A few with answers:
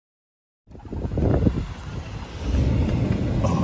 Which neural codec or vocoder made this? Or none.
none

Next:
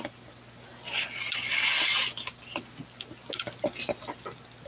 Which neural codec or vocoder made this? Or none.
none